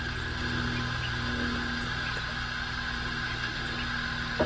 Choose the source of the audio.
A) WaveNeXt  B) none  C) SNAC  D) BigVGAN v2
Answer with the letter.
B